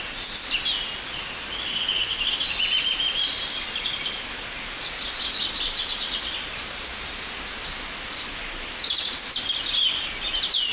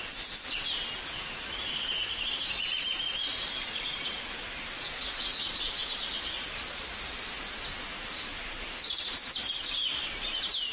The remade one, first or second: second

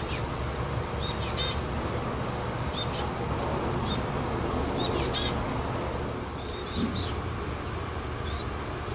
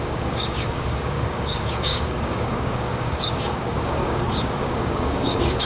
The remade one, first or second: second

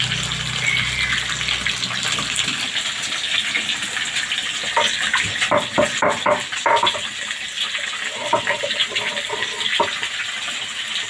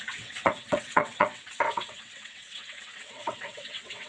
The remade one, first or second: second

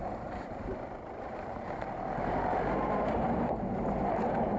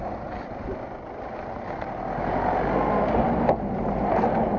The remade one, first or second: first